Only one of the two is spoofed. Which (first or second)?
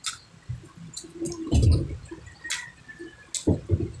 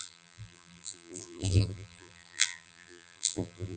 second